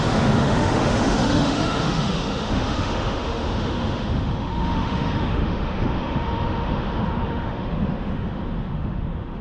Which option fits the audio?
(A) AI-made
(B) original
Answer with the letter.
A